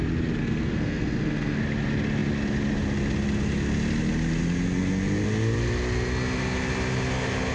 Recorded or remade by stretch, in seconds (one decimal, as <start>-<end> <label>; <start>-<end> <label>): 0.0-0.4 recorded; 0.4-1.6 remade; 1.6-7.5 recorded